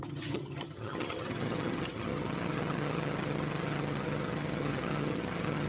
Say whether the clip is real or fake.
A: fake